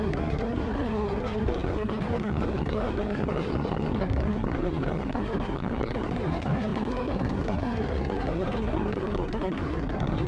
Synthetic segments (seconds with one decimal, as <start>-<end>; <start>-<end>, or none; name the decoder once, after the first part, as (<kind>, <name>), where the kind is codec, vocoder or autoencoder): 0.0-10.3 (codec, SNAC)